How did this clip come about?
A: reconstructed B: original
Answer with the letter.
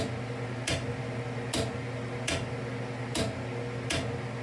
B